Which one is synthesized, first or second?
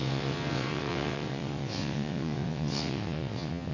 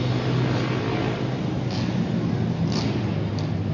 first